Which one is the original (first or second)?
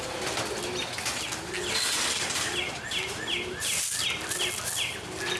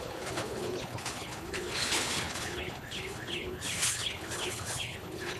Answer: first